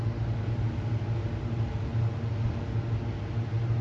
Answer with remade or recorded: recorded